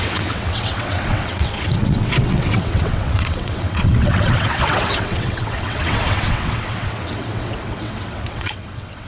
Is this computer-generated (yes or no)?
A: yes